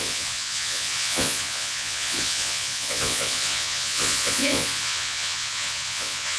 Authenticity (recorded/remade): remade